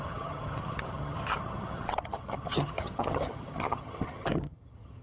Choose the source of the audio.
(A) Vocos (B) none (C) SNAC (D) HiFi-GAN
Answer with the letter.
D